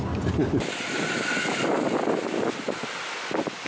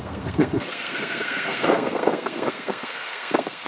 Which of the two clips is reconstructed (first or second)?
second